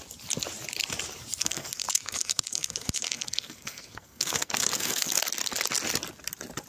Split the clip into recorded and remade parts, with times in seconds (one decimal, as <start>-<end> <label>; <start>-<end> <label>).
0.0-1.4 recorded; 1.4-5.2 remade; 5.2-6.7 recorded